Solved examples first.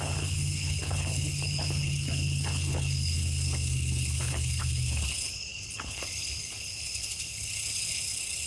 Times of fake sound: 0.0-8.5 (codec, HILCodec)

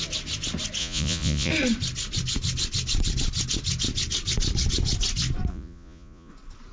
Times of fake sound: 0.8-1.5 (vocoder, Vocos); 5.5-6.3